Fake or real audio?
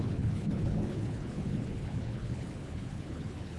fake